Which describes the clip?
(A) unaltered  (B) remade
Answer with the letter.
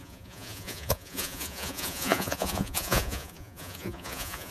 B